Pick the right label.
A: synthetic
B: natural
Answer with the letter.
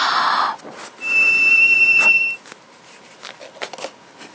B